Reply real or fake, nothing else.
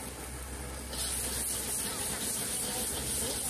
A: real